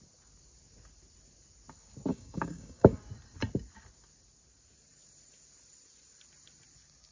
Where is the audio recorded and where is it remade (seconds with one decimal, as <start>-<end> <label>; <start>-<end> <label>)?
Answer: 0.0-2.1 recorded; 2.1-3.0 remade; 3.0-7.1 recorded